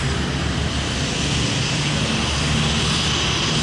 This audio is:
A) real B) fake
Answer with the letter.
A